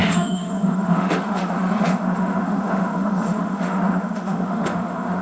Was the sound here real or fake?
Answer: fake